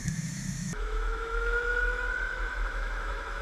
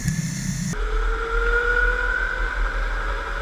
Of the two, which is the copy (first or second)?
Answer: first